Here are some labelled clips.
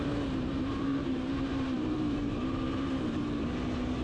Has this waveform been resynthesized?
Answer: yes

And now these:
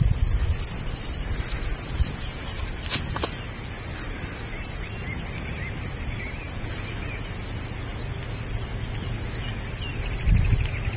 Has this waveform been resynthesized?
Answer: no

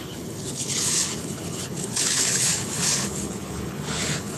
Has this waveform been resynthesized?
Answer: yes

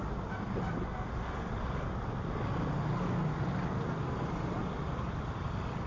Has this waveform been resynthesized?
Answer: no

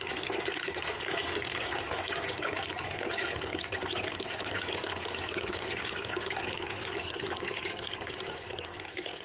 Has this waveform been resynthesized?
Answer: yes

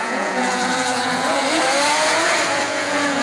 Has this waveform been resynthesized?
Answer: yes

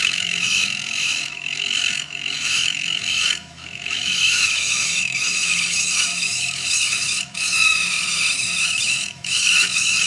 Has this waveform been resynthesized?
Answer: yes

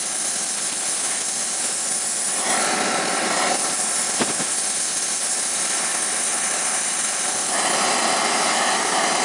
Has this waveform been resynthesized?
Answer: no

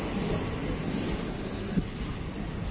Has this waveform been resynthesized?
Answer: no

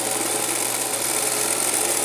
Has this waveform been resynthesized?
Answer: no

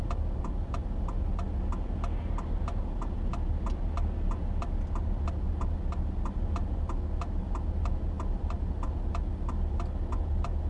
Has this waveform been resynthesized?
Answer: no